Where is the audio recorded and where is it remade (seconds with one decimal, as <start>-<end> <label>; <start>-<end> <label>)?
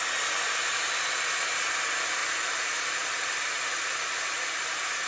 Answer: 0.0-5.1 remade